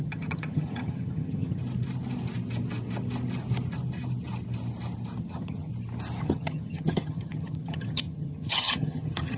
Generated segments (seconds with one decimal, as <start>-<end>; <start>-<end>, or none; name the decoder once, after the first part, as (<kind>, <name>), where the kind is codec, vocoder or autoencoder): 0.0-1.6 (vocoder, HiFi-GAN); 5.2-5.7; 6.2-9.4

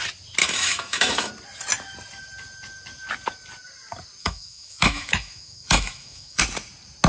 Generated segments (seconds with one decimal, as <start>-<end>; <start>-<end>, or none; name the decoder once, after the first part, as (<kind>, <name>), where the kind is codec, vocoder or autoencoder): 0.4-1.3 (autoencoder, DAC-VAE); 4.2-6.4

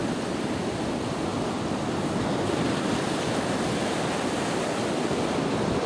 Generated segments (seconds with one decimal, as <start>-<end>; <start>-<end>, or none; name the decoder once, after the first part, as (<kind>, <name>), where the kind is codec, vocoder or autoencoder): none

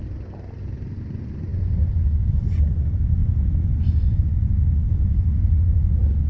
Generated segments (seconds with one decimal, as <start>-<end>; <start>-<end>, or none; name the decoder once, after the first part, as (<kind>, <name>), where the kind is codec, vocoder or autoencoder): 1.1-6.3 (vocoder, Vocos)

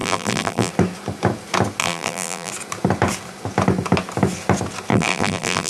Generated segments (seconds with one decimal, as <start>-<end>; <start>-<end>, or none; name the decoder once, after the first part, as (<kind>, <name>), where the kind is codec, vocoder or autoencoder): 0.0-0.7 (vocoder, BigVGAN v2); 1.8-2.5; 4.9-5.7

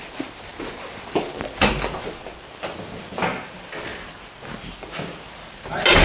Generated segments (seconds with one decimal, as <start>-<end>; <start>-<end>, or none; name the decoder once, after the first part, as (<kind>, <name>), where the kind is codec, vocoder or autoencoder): none